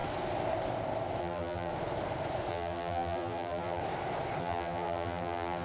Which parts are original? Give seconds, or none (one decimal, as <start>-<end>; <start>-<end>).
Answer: 0.0-1.2; 1.7-2.5; 3.8-4.4

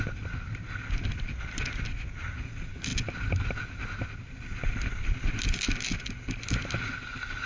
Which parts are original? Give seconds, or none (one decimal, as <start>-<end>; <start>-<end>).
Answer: 0.0-7.5